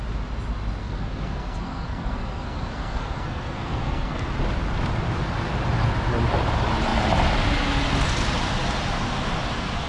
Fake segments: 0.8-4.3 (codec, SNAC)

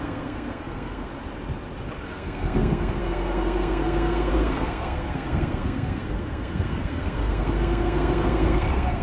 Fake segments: 0.0-1.1 (codec, SNAC); 2.1-9.0

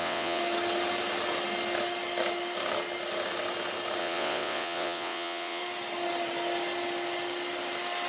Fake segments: 0.0-0.4 (vocoder, WaveNeXt); 4.0-5.6

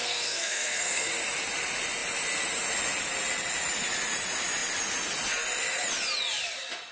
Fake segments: 0.0-1.1 (codec, SNAC)

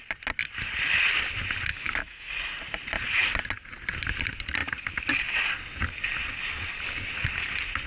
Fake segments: 1.7-2.3 (autoencoder, DAC-VAE)

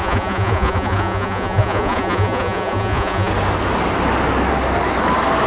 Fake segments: 0.0-3.3 (vocoder, Vocos)

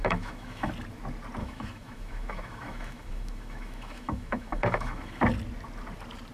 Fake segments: 0.0-0.7 (autoencoder, DAC-VAE); 1.4-5.2